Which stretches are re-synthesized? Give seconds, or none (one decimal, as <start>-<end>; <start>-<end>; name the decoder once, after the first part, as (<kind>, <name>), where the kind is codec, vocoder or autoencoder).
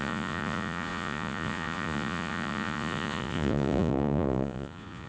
0.0-5.1 (vocoder, Vocos)